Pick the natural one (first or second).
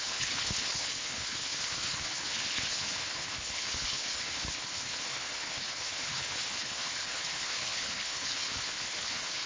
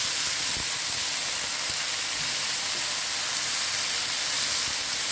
second